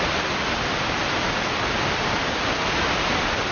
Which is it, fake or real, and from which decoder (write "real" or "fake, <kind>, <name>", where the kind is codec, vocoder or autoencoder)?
real